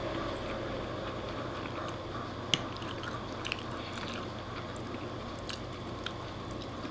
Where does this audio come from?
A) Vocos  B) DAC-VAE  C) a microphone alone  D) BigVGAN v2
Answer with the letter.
C